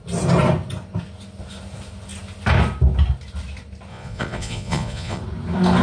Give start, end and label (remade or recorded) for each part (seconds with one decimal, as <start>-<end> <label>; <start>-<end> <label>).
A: 0.0-3.9 recorded; 3.9-5.2 remade; 5.2-5.8 recorded